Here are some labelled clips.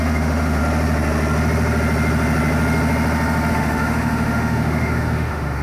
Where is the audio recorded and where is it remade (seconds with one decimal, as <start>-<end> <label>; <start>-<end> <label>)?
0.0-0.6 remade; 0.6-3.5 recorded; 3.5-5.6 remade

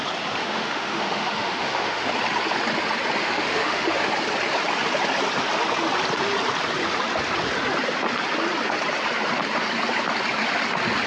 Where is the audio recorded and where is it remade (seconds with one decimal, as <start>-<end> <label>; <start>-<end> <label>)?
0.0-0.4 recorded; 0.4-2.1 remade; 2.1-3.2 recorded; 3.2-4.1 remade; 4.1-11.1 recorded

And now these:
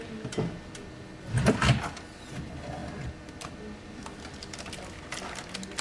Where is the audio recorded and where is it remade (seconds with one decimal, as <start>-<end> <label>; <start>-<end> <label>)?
0.0-5.8 recorded